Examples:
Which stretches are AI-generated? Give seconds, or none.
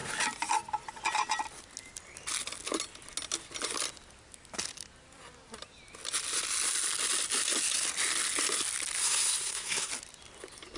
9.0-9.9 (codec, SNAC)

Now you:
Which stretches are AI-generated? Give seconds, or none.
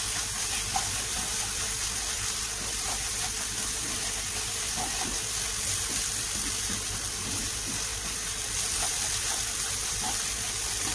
none